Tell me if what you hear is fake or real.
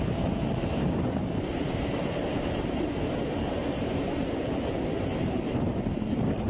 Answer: fake